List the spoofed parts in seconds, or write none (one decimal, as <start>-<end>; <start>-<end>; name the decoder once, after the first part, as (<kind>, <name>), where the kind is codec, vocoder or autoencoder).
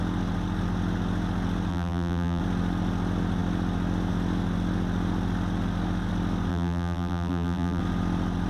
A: 1.7-2.4 (vocoder, BigVGAN v2); 6.5-7.8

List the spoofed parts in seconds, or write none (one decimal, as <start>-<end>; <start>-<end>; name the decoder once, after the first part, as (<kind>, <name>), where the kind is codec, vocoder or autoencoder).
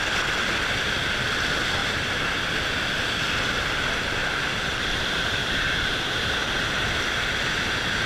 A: 1.8-2.4 (vocoder, BigVGAN v2); 4.2-6.8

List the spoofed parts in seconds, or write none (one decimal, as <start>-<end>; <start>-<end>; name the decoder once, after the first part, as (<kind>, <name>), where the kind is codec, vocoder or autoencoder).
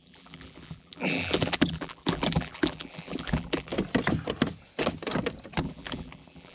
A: 0.0-3.7 (vocoder, BigVGAN v2); 5.6-6.5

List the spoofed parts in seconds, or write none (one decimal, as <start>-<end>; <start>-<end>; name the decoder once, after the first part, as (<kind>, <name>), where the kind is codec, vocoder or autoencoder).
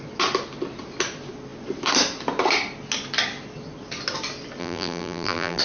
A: 4.6-5.6 (vocoder, BigVGAN v2)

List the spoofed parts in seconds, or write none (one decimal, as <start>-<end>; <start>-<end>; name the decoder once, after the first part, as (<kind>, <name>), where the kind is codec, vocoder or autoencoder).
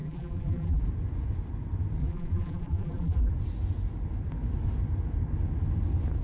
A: 0.0-0.8 (vocoder, BigVGAN v2); 2.0-3.3